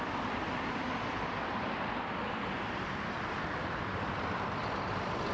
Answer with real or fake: fake